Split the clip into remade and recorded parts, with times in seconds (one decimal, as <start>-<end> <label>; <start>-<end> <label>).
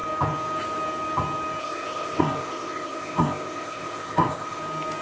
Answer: 0.0-1.6 recorded; 1.6-4.6 remade; 4.6-5.0 recorded